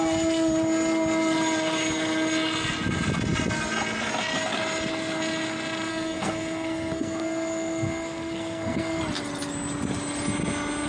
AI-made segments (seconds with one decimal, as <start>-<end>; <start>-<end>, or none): 5.9-9.0